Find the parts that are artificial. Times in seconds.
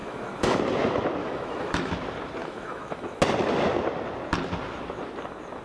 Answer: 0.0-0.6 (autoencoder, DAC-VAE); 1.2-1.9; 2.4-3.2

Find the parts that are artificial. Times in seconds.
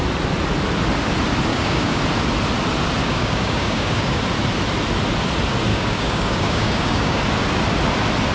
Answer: 1.5-2.0 (codec, DAC); 3.0-4.2; 5.7-7.2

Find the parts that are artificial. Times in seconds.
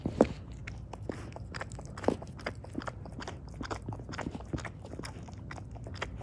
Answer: none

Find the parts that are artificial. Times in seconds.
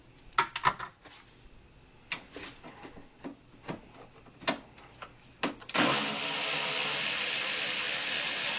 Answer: none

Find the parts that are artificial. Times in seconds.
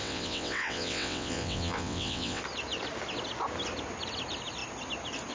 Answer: 0.0-2.4 (vocoder, WaveNeXt)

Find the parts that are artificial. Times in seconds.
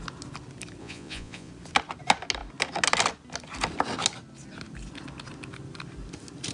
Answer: 0.8-1.5 (vocoder, Vocos)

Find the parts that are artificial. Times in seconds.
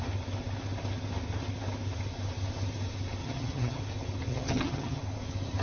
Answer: 3.2-3.8 (vocoder, HiFi-GAN); 4.3-5.0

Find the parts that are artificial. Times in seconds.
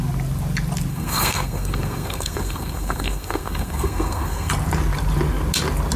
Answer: 0.9-4.5 (codec, SNAC)